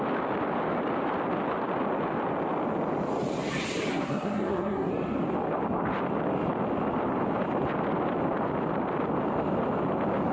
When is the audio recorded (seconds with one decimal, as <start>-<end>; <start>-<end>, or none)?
0.0-3.9; 4.9-10.3